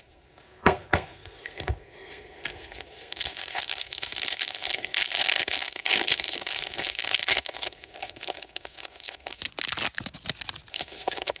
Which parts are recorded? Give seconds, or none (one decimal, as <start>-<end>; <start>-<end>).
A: 9.4-10.7